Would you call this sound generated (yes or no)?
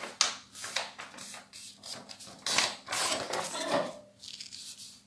no